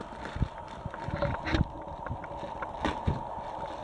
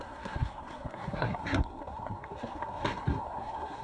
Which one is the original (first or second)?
first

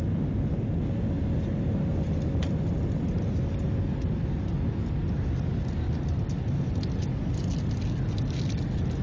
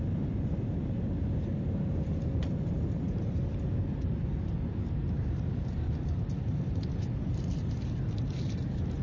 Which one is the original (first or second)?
first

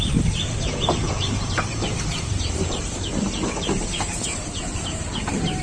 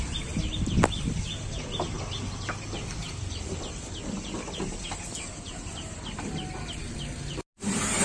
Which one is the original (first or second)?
second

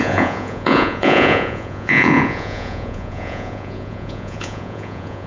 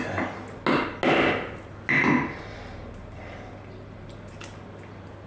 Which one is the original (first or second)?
second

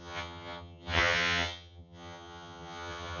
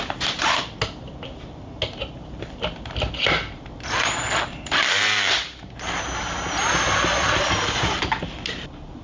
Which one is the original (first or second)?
second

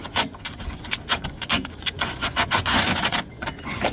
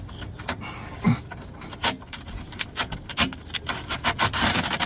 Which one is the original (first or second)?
second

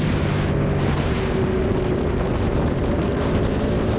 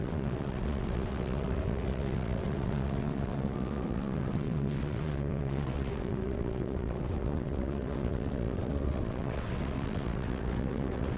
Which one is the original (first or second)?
first